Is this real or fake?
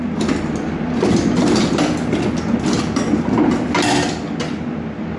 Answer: real